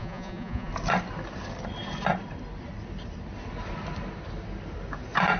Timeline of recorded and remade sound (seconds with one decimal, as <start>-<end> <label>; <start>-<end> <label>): 0.0-0.7 remade; 0.7-5.4 recorded